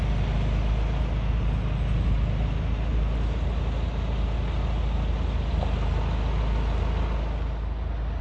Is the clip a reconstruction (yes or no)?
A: no